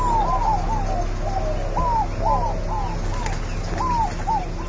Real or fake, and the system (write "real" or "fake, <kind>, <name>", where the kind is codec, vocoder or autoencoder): real